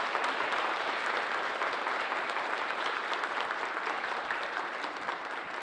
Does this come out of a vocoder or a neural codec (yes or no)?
yes